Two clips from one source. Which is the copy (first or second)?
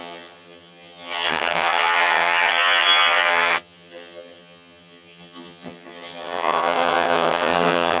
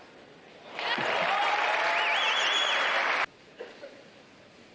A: first